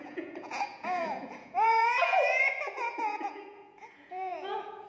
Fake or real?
fake